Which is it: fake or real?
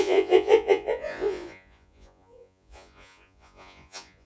fake